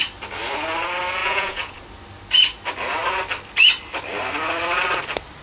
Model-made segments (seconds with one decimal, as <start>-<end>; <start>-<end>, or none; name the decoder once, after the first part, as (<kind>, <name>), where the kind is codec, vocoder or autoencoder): 1.2-1.8 (vocoder, Vocos)